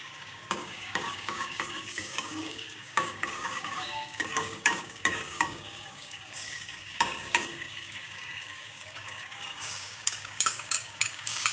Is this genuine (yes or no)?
no